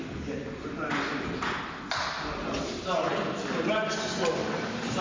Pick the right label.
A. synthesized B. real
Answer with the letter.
B